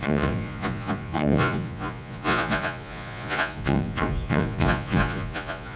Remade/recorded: remade